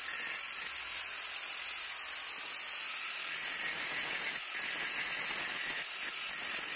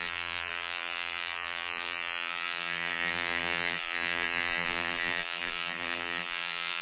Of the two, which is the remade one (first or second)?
second